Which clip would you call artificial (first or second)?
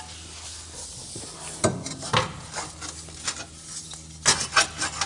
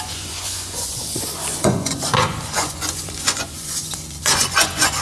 second